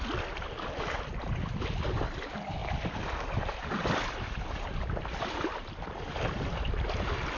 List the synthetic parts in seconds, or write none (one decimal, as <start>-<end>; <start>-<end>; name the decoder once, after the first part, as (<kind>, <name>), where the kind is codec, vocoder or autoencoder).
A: none